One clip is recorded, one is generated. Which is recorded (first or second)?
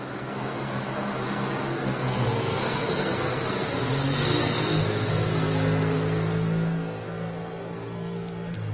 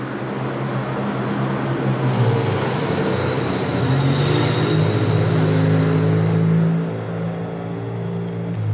second